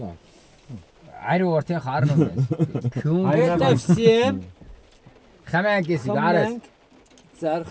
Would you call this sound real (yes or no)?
yes